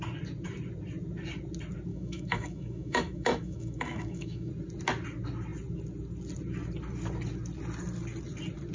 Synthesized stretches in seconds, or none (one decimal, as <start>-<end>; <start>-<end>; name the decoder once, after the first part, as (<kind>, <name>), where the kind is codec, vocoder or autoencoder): 1.9-4.5 (autoencoder, DAC-VAE)